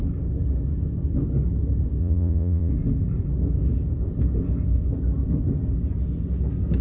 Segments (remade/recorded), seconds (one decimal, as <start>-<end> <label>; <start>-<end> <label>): 0.0-2.0 recorded; 2.0-2.7 remade; 2.7-6.8 recorded